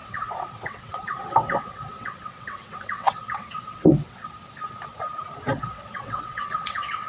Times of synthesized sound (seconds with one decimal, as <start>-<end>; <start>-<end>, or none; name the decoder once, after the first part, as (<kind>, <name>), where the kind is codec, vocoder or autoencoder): 0.0-4.3 (vocoder, WaveNeXt); 5.5-7.1